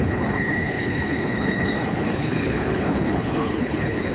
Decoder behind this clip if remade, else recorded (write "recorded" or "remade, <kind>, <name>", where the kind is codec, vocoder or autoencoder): remade, codec, HILCodec